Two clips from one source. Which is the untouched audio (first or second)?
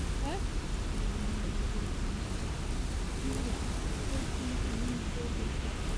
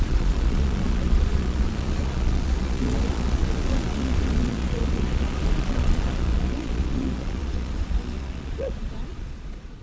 first